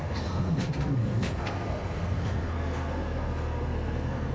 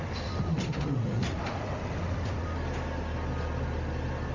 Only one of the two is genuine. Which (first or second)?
second